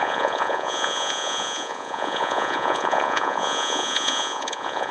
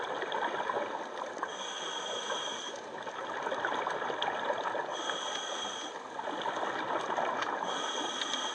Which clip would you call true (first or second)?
second